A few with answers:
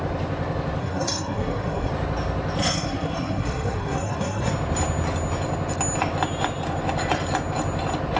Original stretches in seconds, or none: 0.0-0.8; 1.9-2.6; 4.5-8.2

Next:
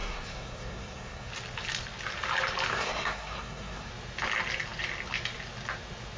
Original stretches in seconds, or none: 1.3-2.7; 3.9-6.2

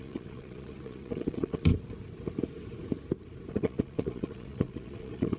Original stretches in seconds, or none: 1.7-3.5

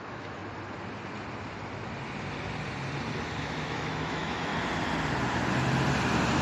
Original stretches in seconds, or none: 0.4-3.4; 4.5-6.4

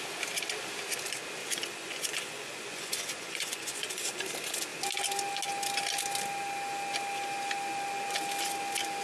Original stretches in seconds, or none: 0.0-1.4; 4.2-9.0

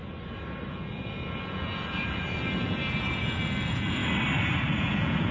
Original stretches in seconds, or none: 0.0-0.7; 4.0-4.8

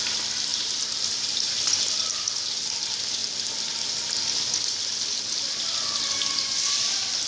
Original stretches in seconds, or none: 0.0-7.3

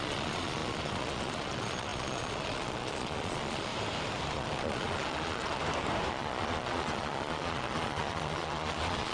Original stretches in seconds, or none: 3.7-4.3; 5.6-6.1